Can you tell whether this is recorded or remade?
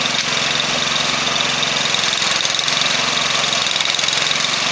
recorded